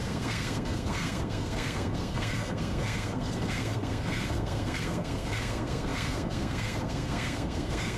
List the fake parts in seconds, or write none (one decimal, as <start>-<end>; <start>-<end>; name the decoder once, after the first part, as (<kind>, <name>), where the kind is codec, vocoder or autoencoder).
0.0-8.0 (codec, SNAC)